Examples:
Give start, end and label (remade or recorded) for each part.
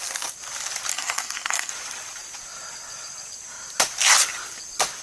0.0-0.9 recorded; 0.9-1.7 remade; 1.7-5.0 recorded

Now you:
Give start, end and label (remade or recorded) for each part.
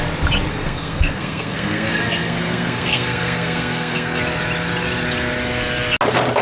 0.0-0.5 recorded; 0.5-4.2 remade; 4.2-6.4 recorded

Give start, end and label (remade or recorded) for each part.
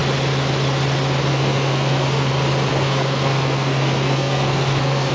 0.0-1.3 recorded; 1.3-2.3 remade; 2.3-2.7 recorded; 2.7-5.1 remade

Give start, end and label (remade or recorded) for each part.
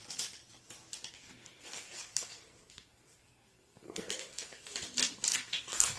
0.0-1.1 recorded; 1.1-4.7 remade; 4.7-5.3 recorded; 5.3-6.0 remade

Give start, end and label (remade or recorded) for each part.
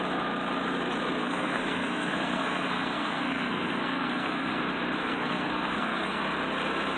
0.0-1.2 recorded; 1.2-4.6 remade; 4.6-5.0 recorded; 5.0-6.2 remade; 6.2-7.0 recorded